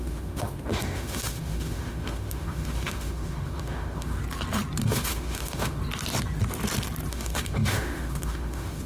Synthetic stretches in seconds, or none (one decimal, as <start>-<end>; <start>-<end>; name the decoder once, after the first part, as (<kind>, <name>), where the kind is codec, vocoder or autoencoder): 0.0-4.2 (autoencoder, DAC-VAE); 4.8-5.8; 7.1-8.9